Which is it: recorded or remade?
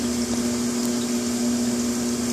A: recorded